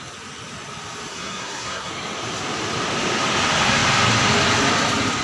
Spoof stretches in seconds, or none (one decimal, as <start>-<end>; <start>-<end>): 1.1-1.9